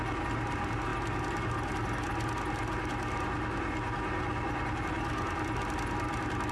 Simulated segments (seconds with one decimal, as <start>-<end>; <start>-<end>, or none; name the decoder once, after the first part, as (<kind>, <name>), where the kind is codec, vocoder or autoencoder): none

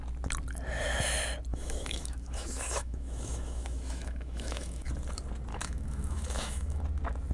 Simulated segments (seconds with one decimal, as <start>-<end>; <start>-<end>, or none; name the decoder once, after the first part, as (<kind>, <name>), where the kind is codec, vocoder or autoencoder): 1.5-4.9 (autoencoder, DAC-VAE); 5.5-6.8

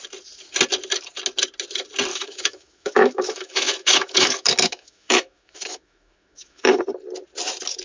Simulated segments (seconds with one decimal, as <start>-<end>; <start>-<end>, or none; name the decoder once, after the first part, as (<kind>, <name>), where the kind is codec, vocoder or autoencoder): 2.1-6.8 (autoencoder, DAC-VAE)

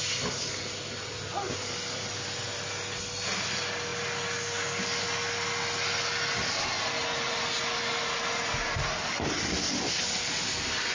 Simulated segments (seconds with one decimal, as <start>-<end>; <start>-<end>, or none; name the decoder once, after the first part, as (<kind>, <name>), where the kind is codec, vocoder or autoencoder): none

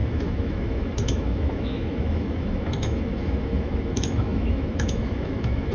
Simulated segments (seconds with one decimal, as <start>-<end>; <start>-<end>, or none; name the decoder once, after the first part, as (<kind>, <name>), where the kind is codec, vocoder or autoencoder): 0.0-5.7 (autoencoder, DAC-VAE)

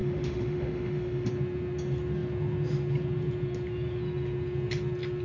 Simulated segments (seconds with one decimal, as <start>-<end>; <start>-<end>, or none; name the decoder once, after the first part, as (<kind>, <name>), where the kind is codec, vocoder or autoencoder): 0.0-1.3 (autoencoder, DAC-VAE)

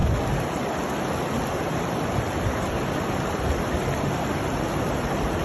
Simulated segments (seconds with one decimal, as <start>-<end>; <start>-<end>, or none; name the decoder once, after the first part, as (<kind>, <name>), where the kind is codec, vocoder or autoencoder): none

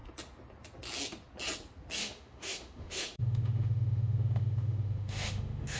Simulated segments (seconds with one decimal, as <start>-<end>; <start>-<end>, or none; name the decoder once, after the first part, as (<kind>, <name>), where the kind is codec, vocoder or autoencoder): 2.0-5.8 (autoencoder, DAC-VAE)